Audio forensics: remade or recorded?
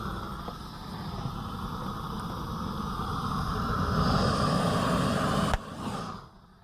recorded